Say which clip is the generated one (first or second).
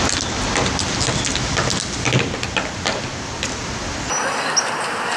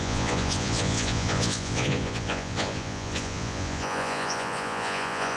second